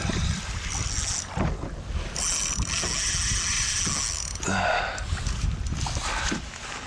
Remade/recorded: recorded